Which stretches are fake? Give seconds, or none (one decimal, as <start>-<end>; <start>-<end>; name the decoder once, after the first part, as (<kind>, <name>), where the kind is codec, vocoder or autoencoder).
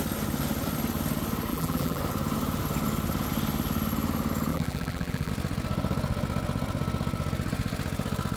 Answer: 1.5-2.0 (vocoder, BigVGAN v2); 4.5-5.3